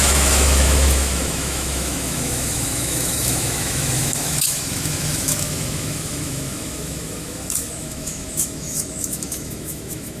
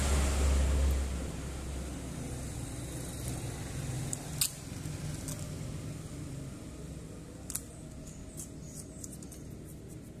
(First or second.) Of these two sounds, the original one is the second